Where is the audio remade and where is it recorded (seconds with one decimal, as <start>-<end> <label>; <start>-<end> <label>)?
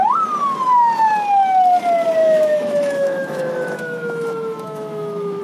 0.0-2.2 recorded; 2.2-5.4 remade